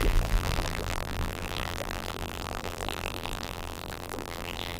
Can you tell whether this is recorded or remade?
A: remade